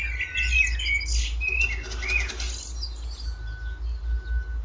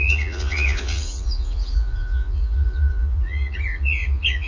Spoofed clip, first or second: second